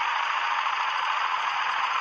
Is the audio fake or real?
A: fake